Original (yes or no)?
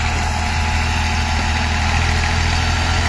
yes